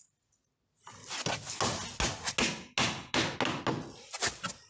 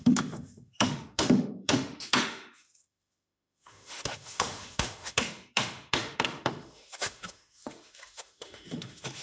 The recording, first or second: first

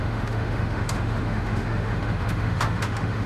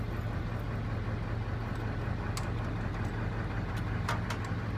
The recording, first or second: second